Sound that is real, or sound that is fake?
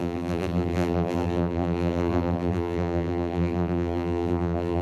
fake